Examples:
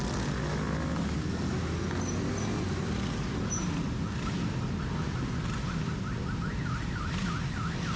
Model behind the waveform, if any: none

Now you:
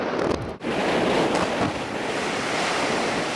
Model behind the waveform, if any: none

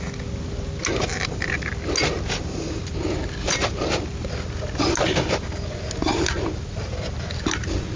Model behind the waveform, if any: none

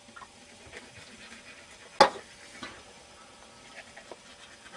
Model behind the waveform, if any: none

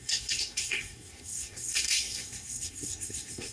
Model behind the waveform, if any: codec, SNAC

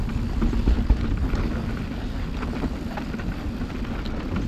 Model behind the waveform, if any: none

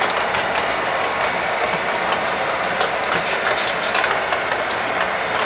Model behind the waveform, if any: none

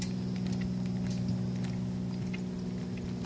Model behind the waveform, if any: none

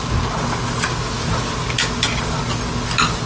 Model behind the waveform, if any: none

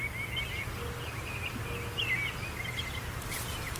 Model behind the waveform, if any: none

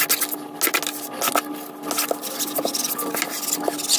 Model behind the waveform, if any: none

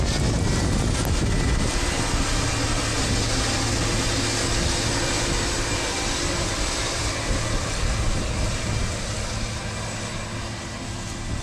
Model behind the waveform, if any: none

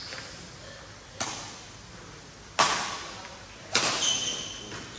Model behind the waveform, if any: none